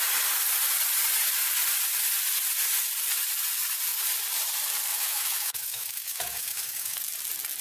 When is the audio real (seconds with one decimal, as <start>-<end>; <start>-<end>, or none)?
0.0-4.9; 7.0-7.6